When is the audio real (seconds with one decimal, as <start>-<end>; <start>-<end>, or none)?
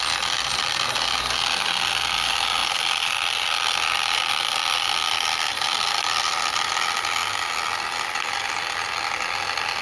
0.0-9.8